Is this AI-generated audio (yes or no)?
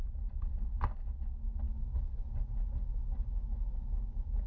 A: no